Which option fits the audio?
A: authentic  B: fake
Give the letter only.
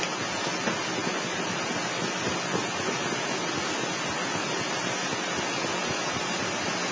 A